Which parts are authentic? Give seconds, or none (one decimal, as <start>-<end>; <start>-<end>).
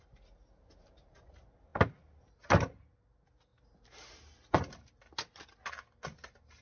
0.0-6.6